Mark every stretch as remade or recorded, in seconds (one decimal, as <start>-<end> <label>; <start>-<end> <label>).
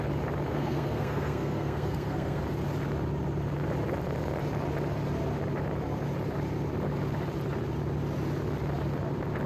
0.0-0.5 recorded; 0.5-2.4 remade; 2.4-9.5 recorded